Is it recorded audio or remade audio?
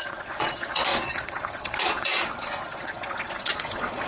remade